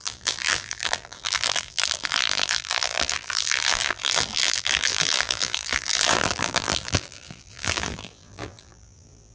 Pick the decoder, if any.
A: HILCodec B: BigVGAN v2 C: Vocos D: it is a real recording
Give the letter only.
B